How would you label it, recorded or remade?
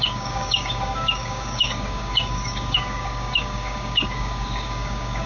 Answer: remade